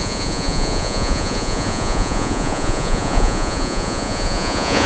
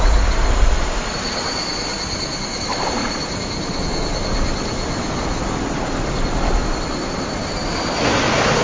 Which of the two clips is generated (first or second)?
first